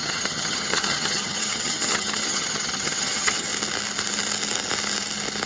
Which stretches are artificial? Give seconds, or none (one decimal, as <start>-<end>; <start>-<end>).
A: 0.0-3.5